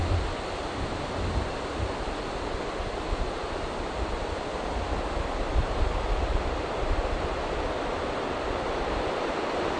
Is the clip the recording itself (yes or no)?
yes